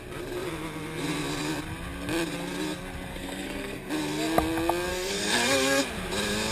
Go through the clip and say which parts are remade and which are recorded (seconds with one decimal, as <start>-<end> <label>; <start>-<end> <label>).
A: 0.0-3.1 recorded; 3.1-3.9 remade; 3.9-4.9 recorded; 4.9-5.8 remade; 5.8-6.5 recorded